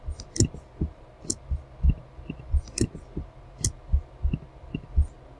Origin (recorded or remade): recorded